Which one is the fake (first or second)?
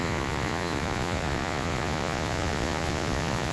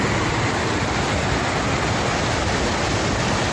first